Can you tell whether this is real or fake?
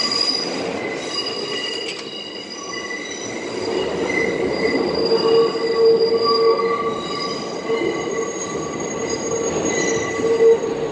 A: real